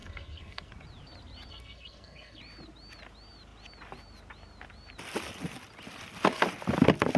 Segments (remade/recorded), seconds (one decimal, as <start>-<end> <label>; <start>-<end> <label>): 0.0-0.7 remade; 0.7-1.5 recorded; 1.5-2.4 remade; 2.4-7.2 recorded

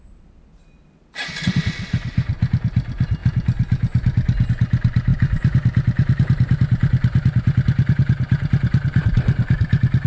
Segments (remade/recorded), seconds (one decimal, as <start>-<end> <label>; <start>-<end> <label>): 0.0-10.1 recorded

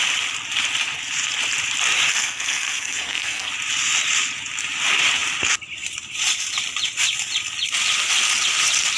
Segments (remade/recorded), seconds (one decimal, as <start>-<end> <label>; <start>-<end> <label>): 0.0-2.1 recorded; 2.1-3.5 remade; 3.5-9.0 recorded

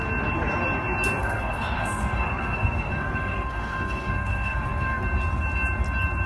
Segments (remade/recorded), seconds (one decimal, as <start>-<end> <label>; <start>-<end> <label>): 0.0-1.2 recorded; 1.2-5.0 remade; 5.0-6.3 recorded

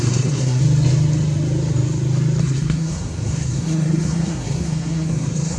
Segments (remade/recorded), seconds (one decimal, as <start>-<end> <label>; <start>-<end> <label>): 0.0-0.6 remade; 0.6-2.4 recorded; 2.4-5.6 remade